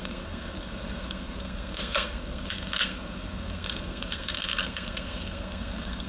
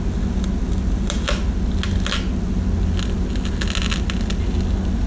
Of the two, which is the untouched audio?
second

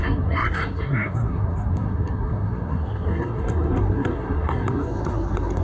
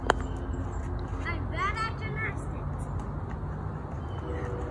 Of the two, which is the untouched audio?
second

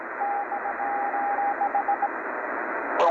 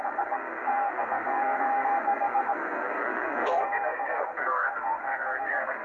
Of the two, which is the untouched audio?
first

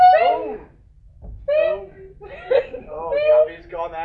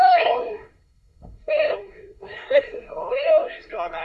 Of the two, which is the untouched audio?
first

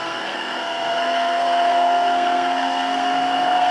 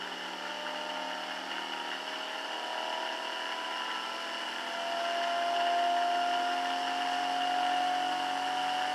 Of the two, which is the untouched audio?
second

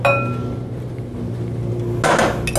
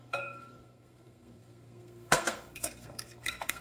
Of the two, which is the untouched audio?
first